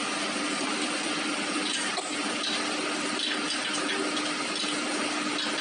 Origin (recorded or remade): recorded